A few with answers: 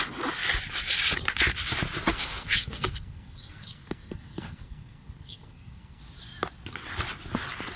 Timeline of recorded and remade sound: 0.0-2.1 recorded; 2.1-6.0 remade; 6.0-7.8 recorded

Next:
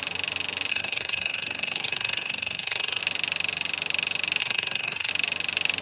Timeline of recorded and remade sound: 0.0-0.7 recorded; 0.7-3.0 remade; 3.0-4.4 recorded; 4.4-5.1 remade; 5.1-5.8 recorded

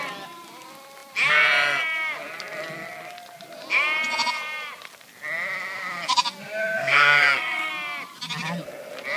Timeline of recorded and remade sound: 0.0-6.6 recorded; 6.6-7.7 remade; 7.7-9.2 recorded

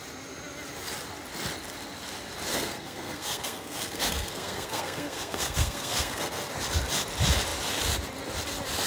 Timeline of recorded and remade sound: 0.0-2.5 recorded; 2.5-6.4 remade; 6.4-8.9 recorded

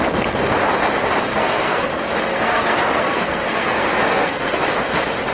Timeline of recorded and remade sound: 0.0-1.3 recorded; 1.3-1.9 remade; 1.9-2.3 recorded; 2.3-4.6 remade; 4.6-5.3 recorded